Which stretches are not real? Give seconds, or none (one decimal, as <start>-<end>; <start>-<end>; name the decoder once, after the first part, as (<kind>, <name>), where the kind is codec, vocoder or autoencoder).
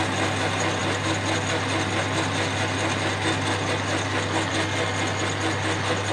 none